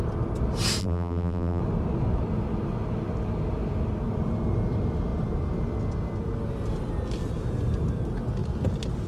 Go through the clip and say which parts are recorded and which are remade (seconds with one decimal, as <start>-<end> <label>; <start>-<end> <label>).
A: 0.0-0.8 recorded; 0.8-1.6 remade; 1.6-9.1 recorded

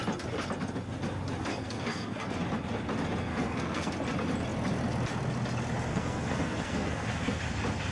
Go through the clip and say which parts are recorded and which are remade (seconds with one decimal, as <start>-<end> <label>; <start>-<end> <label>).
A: 0.0-1.5 recorded; 1.5-2.3 remade; 2.3-3.3 recorded; 3.3-3.9 remade; 3.9-5.9 recorded; 5.9-7.4 remade; 7.4-7.9 recorded

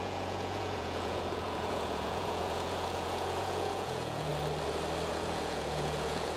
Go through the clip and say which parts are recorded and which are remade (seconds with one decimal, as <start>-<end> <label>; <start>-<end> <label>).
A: 0.0-4.3 remade; 4.3-5.1 recorded; 5.1-6.4 remade